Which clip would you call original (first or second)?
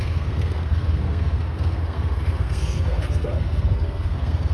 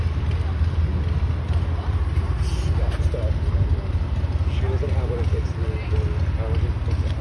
second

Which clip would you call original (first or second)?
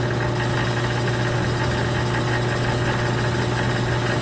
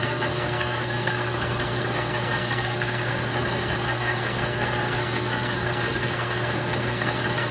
first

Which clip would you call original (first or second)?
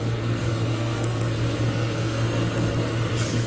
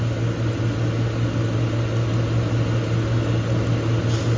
second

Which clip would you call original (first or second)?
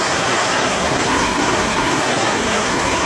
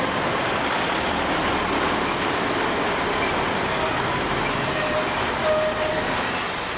second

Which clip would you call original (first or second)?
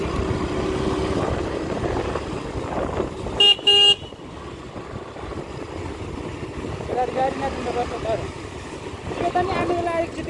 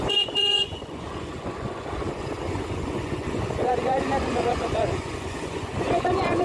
first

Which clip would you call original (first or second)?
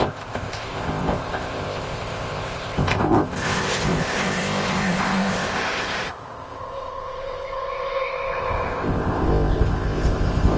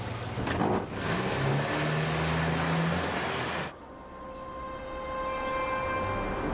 second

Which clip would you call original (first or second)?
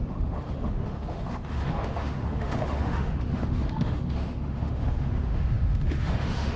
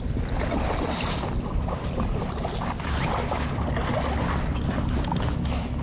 second